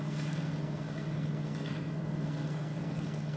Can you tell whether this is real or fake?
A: fake